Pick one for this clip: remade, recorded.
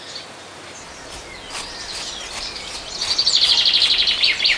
recorded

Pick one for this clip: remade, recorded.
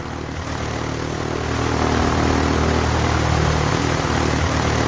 recorded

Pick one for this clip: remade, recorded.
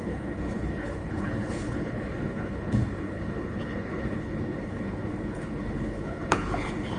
remade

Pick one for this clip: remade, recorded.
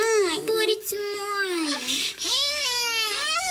remade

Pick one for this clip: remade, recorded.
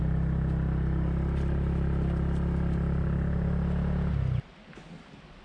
recorded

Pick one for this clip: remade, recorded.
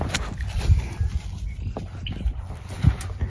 recorded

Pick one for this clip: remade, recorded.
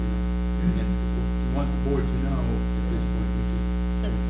recorded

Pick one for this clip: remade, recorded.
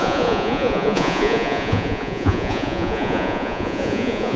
remade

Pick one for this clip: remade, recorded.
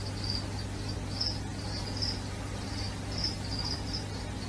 recorded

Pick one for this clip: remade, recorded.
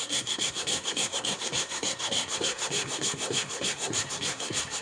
remade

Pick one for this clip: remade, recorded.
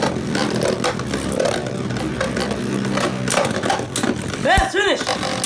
recorded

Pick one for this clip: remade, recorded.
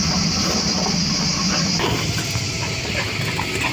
recorded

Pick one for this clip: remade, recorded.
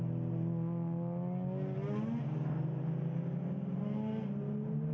recorded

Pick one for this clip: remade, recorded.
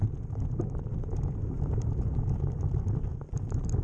recorded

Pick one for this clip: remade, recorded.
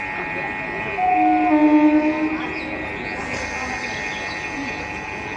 recorded